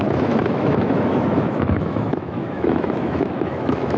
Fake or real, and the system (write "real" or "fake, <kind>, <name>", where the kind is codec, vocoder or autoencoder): fake, autoencoder, DAC-VAE